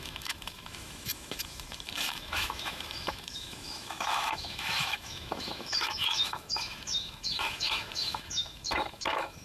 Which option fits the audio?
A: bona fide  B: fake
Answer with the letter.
B